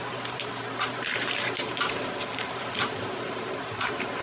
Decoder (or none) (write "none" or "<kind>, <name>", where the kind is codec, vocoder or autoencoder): vocoder, BigVGAN v2